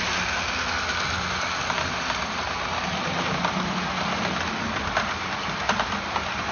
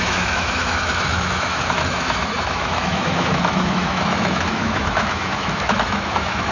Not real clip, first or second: second